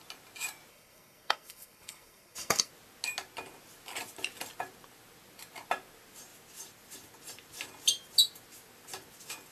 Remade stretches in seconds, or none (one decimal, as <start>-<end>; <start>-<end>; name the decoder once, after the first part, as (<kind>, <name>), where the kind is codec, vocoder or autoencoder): 0.7-2.7 (codec, SNAC)